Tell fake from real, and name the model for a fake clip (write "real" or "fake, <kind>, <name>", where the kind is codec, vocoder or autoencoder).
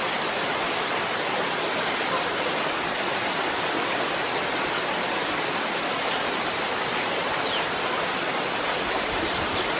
real